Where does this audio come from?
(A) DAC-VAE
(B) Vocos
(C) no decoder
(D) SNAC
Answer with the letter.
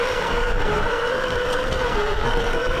D